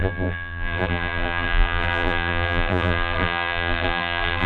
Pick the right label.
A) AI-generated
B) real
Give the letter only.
A